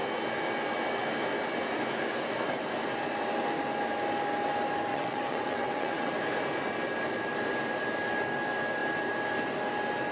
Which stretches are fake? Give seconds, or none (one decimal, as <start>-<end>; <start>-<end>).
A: 4.9-6.1